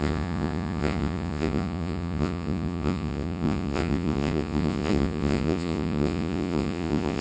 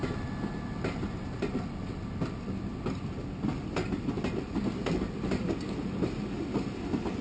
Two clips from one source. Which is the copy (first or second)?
first